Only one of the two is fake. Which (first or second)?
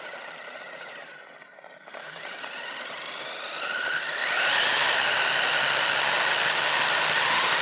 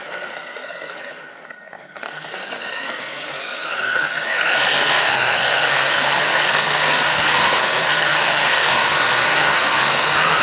second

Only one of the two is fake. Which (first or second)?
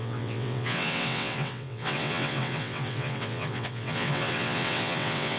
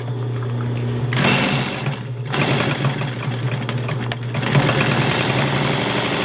first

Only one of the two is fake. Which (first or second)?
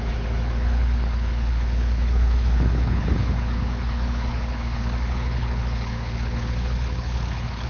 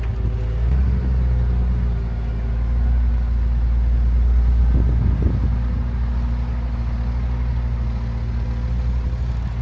first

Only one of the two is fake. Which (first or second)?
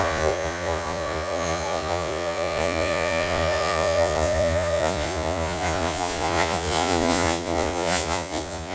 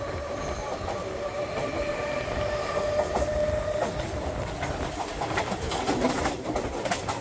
first